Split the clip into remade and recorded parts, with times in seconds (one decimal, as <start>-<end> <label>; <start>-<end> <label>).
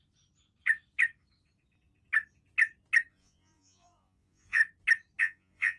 0.0-3.1 recorded; 3.1-4.6 remade; 4.6-5.2 recorded; 5.2-5.8 remade